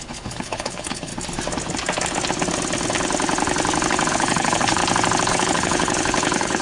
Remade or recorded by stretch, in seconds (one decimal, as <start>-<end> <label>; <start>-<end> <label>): 0.0-1.1 remade; 1.1-4.1 recorded; 4.1-4.8 remade; 4.8-5.3 recorded; 5.3-6.6 remade